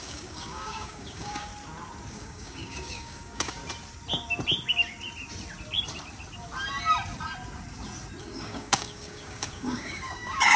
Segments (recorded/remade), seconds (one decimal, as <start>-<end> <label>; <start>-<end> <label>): 0.0-1.5 remade; 1.5-2.1 recorded; 2.1-3.6 remade; 3.6-8.2 recorded; 8.2-10.6 remade